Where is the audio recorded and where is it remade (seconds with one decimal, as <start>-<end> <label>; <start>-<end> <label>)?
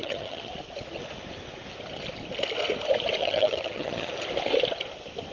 0.0-0.5 remade; 0.5-3.2 recorded; 3.2-4.1 remade; 4.1-5.3 recorded